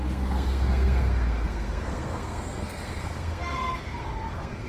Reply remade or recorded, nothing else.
remade